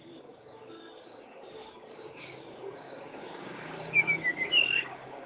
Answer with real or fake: fake